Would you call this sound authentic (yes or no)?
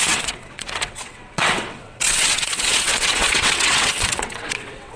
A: no